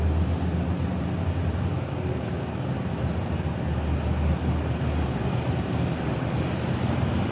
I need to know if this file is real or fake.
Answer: real